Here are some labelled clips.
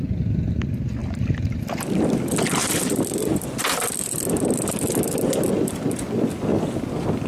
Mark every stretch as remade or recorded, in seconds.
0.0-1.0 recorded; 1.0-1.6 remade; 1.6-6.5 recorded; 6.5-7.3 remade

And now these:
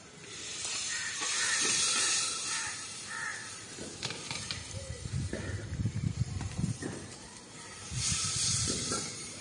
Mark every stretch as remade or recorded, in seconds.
0.0-9.4 remade